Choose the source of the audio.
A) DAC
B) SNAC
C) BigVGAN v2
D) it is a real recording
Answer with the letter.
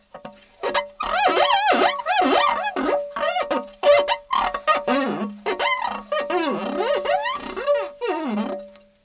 D